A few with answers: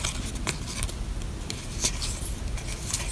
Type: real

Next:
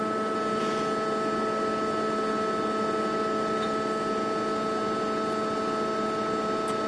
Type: real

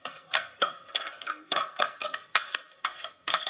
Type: fake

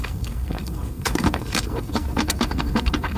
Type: fake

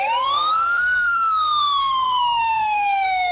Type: fake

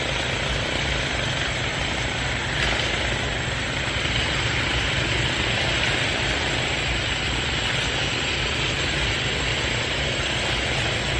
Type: real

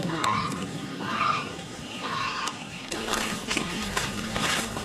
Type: fake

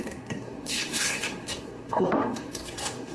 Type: fake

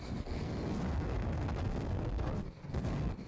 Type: fake